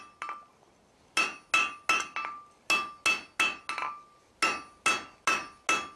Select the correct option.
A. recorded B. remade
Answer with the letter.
A